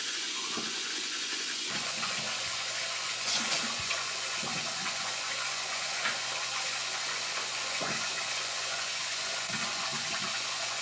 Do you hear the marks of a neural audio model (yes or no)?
yes